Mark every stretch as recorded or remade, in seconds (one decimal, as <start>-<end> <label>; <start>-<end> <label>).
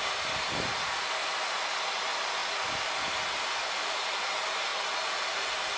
0.0-5.8 recorded